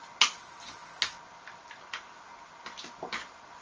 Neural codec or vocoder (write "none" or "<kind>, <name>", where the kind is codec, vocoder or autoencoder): none